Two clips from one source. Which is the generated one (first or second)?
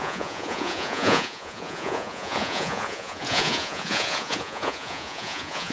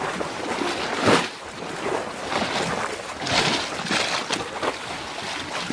first